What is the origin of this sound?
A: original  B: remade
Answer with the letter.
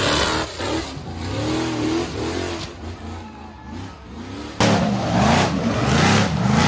A